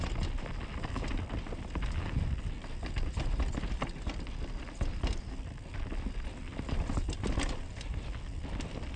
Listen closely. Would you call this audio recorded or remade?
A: recorded